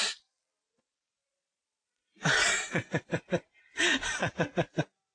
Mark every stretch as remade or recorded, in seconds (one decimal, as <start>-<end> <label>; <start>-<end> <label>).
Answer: 0.0-1.2 recorded; 1.2-4.3 remade; 4.3-5.1 recorded